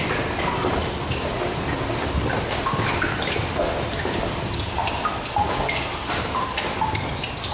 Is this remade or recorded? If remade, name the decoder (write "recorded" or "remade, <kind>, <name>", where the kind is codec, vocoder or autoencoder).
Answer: recorded